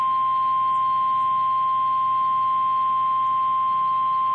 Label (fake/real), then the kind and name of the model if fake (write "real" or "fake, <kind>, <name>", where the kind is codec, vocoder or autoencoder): real